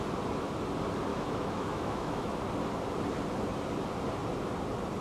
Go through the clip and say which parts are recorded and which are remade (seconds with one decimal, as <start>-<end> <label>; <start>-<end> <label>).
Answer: 0.0-1.1 recorded; 1.1-2.4 remade; 2.4-5.0 recorded